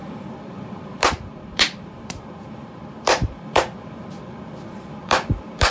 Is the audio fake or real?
fake